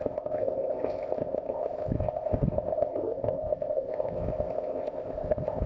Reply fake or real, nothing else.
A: fake